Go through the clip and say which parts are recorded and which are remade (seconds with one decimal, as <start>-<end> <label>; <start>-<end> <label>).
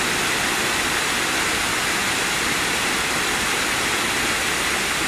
0.0-5.1 recorded